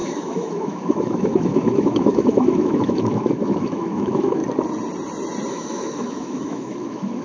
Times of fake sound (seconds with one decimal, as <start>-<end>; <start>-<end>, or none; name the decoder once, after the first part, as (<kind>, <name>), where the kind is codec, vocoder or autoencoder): 0.0-4.4 (autoencoder, DAC-VAE); 5.5-7.2